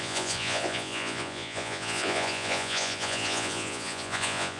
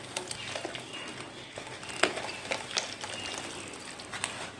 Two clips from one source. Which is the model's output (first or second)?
first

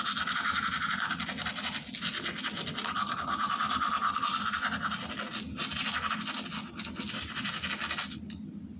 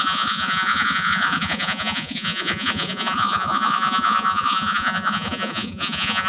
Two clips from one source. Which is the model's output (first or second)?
second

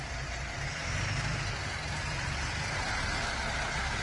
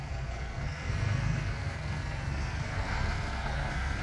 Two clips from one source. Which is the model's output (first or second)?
second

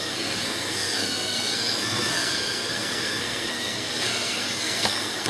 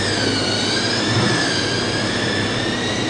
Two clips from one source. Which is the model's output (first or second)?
first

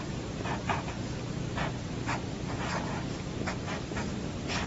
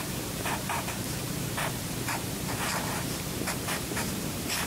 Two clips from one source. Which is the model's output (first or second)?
second